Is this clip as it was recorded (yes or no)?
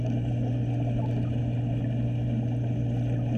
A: yes